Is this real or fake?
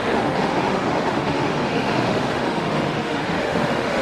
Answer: fake